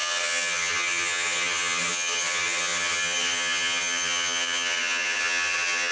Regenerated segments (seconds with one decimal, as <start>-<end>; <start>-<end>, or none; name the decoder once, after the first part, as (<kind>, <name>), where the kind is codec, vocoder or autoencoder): 0.0-5.9 (vocoder, HiFi-GAN)